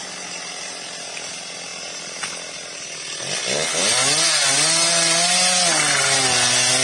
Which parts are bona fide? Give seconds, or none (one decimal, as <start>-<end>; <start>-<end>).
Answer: 0.0-6.8